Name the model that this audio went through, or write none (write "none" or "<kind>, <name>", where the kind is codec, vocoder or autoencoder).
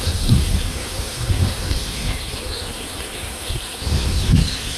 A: codec, SNAC